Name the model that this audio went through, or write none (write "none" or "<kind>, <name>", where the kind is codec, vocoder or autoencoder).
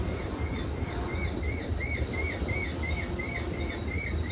none